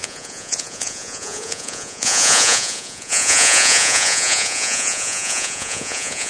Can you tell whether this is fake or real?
fake